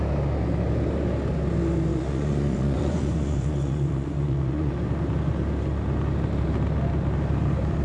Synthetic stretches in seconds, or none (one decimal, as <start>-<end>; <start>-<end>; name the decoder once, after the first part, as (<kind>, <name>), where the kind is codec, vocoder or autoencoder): 1.9-4.7 (vocoder, Vocos)